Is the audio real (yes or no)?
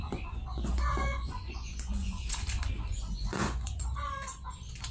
no